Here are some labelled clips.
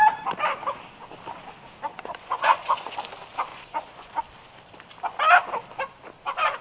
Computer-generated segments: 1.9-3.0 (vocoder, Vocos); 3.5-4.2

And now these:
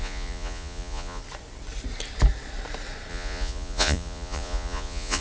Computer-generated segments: 0.0-1.2 (vocoder, Vocos); 3.1-5.2